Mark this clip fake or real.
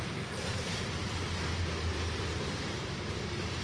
real